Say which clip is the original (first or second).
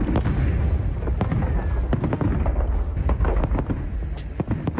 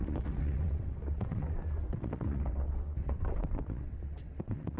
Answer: first